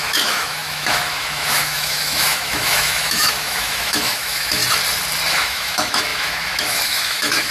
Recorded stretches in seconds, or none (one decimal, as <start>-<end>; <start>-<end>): 4.6-5.3